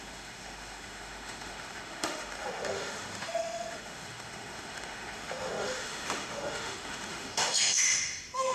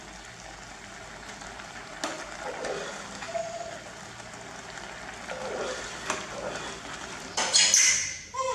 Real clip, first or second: second